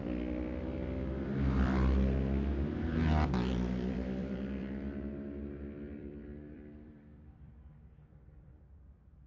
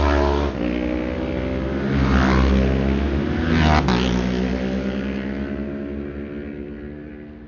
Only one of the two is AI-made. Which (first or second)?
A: first